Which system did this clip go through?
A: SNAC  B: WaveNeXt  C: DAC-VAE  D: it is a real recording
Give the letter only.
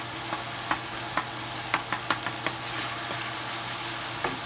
D